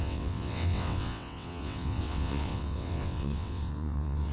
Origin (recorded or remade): remade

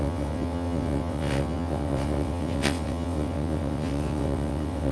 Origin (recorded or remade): remade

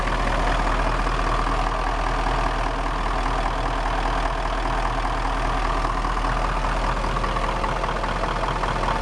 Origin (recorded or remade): recorded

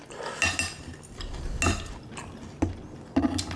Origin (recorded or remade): recorded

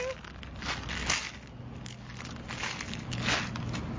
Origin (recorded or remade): recorded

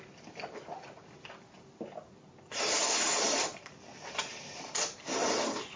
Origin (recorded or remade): recorded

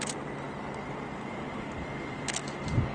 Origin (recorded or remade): recorded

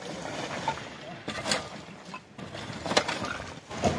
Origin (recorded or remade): recorded